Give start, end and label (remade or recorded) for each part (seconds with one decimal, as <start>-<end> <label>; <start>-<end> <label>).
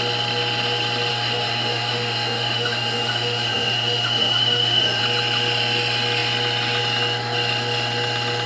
0.0-1.1 recorded; 1.1-5.0 remade; 5.0-8.5 recorded